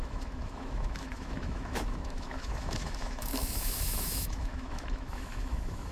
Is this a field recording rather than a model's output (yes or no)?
no